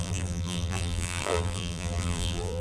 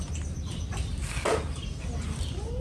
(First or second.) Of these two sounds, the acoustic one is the second